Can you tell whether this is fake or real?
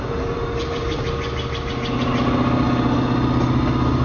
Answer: real